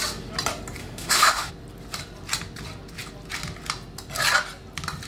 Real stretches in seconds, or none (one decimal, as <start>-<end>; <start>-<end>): 0.0-0.8; 1.5-5.1